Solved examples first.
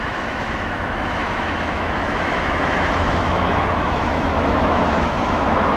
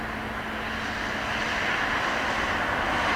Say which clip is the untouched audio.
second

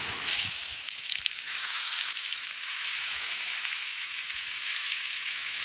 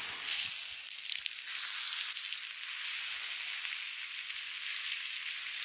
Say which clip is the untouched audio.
second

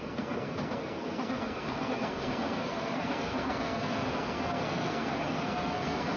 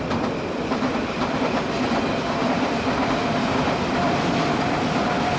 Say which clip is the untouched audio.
second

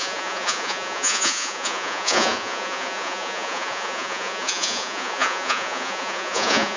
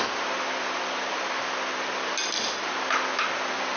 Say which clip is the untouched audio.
second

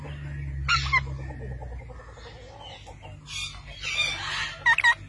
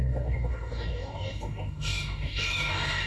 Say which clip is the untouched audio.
first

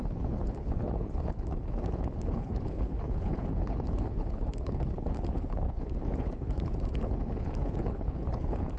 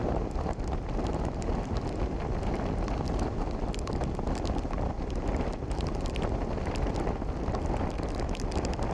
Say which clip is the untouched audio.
second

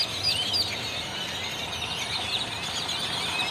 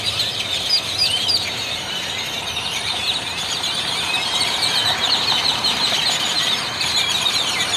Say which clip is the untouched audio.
first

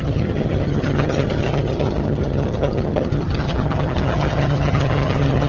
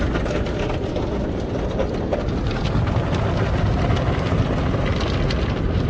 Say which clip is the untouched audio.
second